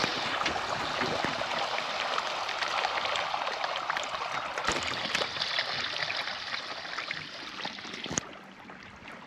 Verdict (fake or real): real